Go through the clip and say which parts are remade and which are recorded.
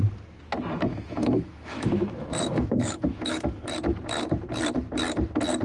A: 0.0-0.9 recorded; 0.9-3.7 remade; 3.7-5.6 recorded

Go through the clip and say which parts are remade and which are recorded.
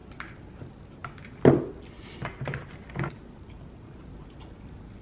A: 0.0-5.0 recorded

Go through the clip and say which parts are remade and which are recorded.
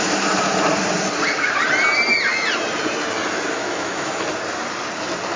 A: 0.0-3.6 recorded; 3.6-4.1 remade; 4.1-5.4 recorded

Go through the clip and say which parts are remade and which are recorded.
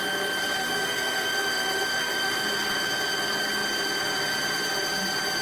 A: 0.0-0.6 recorded; 0.6-2.4 remade; 2.4-5.4 recorded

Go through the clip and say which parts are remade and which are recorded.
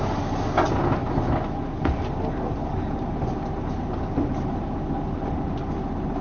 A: 0.0-1.0 recorded; 1.0-1.8 remade; 1.8-6.2 recorded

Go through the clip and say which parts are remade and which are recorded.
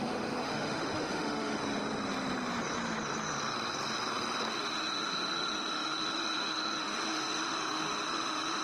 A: 0.0-1.6 remade; 1.6-4.5 recorded; 4.5-8.6 remade